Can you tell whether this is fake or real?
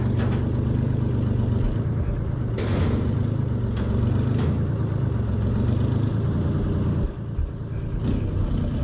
real